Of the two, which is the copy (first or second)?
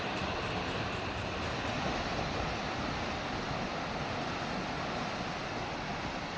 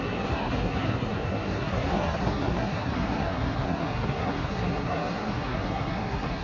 second